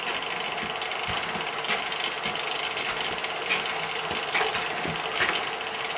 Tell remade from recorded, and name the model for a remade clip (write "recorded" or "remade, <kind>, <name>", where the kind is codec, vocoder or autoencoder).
recorded